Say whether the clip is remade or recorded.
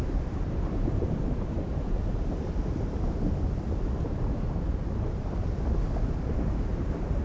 recorded